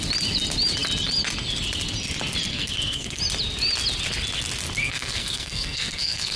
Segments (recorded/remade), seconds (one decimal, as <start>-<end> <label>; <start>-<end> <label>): 0.0-2.5 recorded; 2.5-3.2 remade; 3.2-4.8 recorded; 4.8-6.4 remade